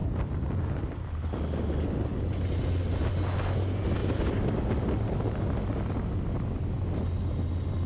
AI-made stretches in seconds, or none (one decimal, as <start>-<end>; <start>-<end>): 0.0-1.5; 2.1-3.1